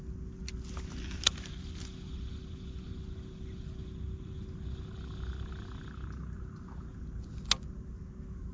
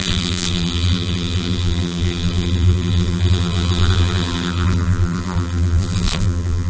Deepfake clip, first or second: second